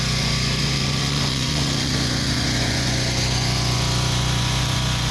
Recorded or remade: remade